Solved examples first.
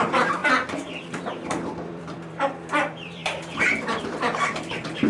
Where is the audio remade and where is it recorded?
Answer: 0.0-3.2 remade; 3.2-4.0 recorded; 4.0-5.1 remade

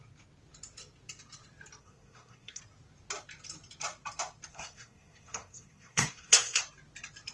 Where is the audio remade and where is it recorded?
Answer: 0.0-1.8 recorded; 1.8-2.6 remade; 2.6-4.5 recorded; 4.5-6.6 remade; 6.6-7.3 recorded

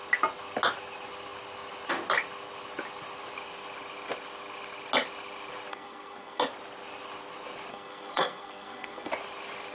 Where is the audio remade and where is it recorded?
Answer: 0.0-5.7 recorded; 5.7-6.4 remade; 6.4-7.7 recorded; 7.7-9.1 remade; 9.1-9.7 recorded

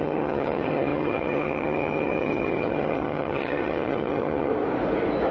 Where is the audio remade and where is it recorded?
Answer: 0.0-4.5 remade; 4.5-5.3 recorded

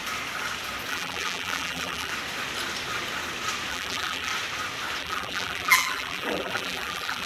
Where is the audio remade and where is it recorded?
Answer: 0.0-0.9 recorded; 0.9-2.1 remade; 2.1-3.7 recorded; 3.7-4.3 remade; 4.3-5.0 recorded; 5.0-7.3 remade

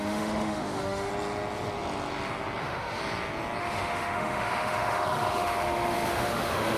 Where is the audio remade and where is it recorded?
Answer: 0.0-1.1 remade; 1.1-2.6 recorded; 2.6-3.0 remade; 3.0-3.6 recorded; 3.6-6.8 remade

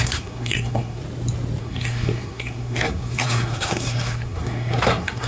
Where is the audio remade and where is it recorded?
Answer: 0.0-1.0 remade; 1.0-1.6 recorded; 1.6-5.3 remade

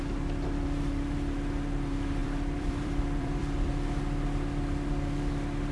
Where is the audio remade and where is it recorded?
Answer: 0.0-2.2 recorded; 2.2-4.0 remade; 4.0-5.7 recorded